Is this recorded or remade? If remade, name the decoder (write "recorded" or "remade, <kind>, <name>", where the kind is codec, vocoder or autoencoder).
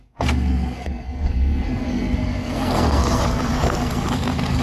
remade, codec, SNAC